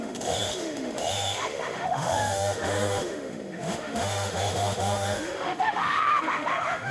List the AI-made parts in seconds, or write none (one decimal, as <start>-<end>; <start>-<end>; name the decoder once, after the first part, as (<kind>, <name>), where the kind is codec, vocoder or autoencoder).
0.0-6.9 (autoencoder, DAC-VAE)